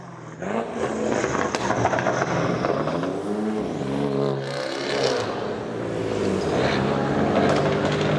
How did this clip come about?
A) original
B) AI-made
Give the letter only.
A